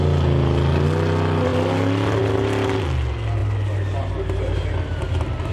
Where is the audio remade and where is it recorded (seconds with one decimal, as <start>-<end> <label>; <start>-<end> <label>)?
0.0-5.5 recorded